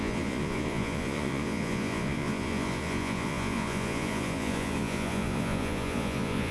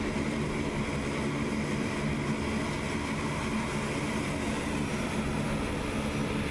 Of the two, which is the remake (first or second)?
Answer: first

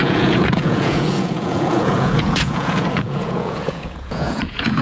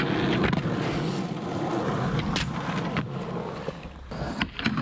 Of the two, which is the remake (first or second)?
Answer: first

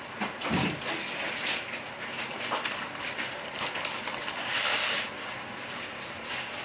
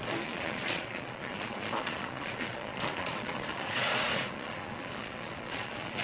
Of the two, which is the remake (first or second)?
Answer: second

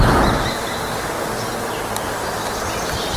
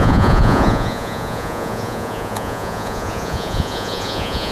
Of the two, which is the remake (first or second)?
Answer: second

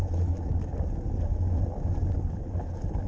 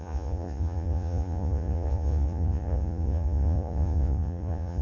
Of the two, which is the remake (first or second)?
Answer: second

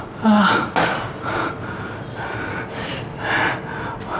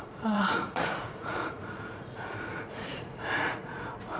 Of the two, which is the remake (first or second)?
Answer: second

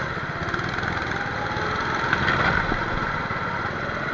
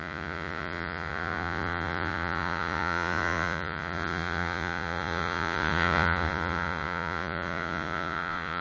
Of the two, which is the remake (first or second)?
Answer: second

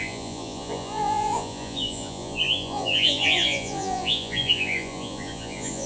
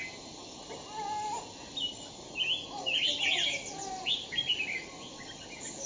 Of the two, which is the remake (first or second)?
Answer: first